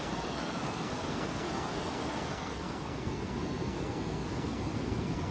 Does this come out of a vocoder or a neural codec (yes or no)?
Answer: yes